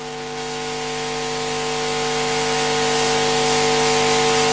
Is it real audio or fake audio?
real